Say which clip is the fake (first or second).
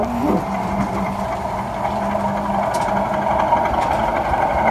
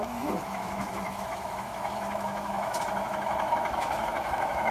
second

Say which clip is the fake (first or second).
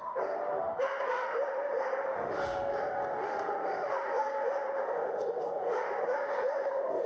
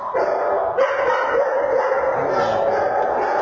first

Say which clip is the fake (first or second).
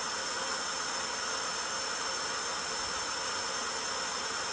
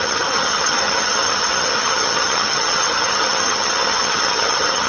second